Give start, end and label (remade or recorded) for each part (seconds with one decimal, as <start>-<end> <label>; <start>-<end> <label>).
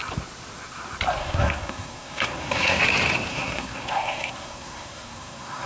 0.0-1.2 recorded; 1.2-2.8 remade; 2.8-3.3 recorded; 3.3-5.7 remade